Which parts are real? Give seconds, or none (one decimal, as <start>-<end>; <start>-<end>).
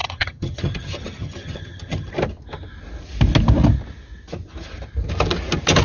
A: 2.1-5.8